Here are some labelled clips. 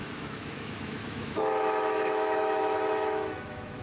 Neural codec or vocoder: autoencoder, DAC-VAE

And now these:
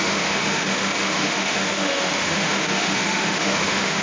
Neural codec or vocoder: autoencoder, DAC-VAE